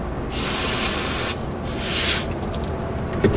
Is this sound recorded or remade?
recorded